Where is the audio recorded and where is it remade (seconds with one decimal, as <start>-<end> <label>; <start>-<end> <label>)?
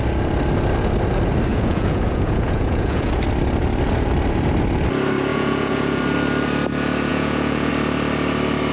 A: 0.0-1.5 recorded; 1.5-3.2 remade; 3.2-5.3 recorded; 5.3-6.0 remade; 6.0-7.1 recorded; 7.1-7.7 remade; 7.7-8.7 recorded